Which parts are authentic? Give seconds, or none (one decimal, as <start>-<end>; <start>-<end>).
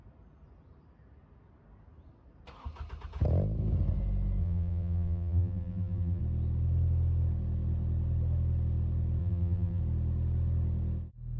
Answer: 0.0-4.4; 6.2-9.2; 9.8-11.4